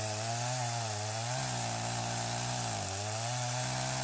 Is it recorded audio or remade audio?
recorded